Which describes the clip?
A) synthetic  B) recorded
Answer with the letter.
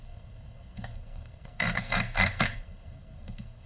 A